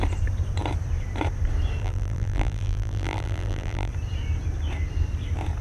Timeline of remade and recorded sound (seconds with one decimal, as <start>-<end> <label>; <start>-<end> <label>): 0.0-1.8 recorded; 1.8-3.9 remade; 3.9-5.6 recorded

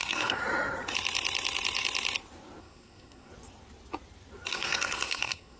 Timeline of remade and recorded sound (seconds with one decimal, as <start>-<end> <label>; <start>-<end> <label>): 0.0-0.4 remade; 0.4-2.6 recorded; 2.6-3.3 remade; 3.3-4.5 recorded; 4.5-5.6 remade

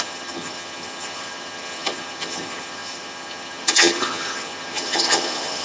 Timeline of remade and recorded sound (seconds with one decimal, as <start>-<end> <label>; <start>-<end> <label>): 0.0-5.6 remade

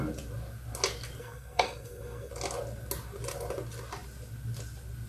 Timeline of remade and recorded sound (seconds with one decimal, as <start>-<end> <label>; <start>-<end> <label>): 0.0-1.2 recorded; 1.2-2.3 remade; 2.3-5.1 recorded